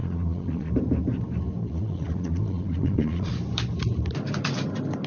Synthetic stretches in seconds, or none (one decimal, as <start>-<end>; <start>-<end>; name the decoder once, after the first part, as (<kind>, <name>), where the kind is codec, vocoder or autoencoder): 0.0-0.7 (vocoder, Vocos); 1.6-3.3